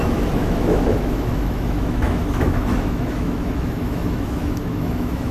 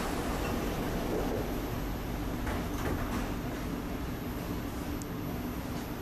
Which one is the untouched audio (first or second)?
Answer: second